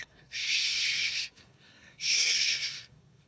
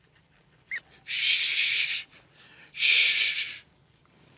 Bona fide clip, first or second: second